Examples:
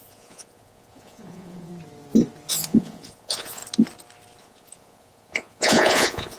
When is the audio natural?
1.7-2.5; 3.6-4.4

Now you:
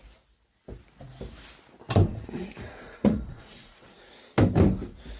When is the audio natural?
0.0-2.1; 4.1-5.2

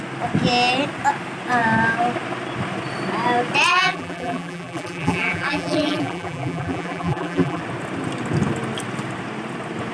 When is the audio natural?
0.0-3.7; 7.6-9.9

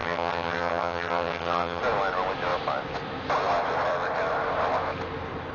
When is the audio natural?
1.8-5.5

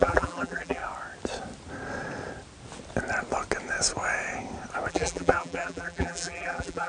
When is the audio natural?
0.8-4.9

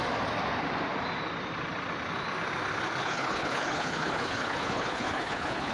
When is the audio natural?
0.0-3.0

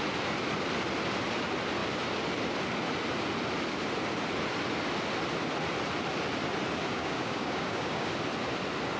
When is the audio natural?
0.0-6.9; 8.1-9.0

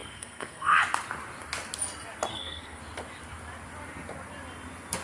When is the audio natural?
0.8-2.3; 2.8-5.0